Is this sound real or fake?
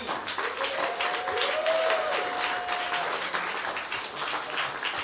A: real